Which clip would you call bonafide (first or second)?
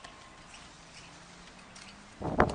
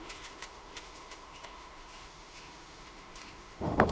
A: first